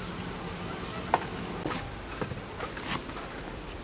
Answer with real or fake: real